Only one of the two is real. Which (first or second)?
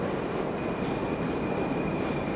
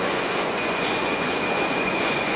first